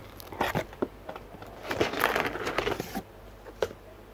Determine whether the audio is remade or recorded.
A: recorded